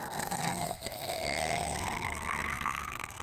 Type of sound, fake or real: fake